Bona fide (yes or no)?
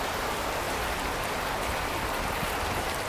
yes